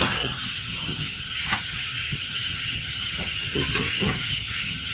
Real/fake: fake